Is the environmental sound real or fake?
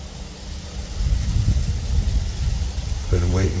real